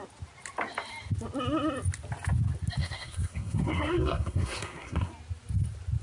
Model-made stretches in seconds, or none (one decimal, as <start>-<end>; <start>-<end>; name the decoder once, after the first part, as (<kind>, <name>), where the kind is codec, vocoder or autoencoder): 2.8-5.1 (codec, SNAC)